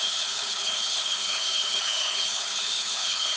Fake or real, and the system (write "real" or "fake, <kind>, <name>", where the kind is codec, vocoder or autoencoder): fake, codec, HILCodec